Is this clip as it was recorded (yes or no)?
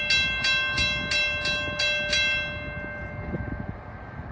yes